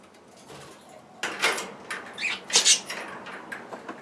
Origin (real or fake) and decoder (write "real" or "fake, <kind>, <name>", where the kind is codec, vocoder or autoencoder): real